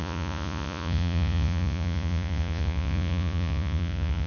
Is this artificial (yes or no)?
yes